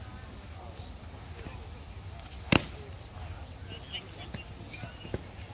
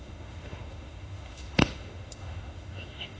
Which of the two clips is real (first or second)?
first